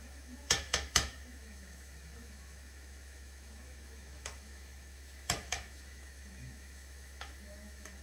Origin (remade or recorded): remade